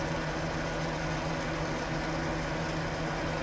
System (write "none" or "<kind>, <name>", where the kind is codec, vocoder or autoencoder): none